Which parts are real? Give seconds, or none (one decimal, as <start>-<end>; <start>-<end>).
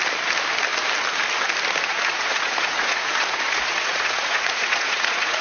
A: 0.0-1.9